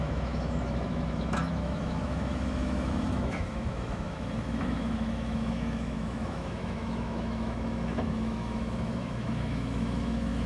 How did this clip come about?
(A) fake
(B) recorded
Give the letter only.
A